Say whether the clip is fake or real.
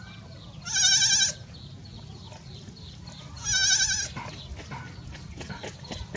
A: real